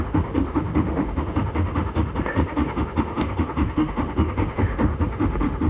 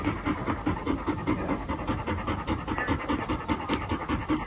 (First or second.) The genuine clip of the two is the second